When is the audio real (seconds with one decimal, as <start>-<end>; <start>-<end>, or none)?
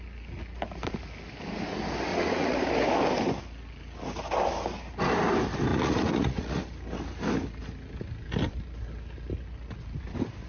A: 0.0-2.1; 2.7-5.7; 6.6-10.5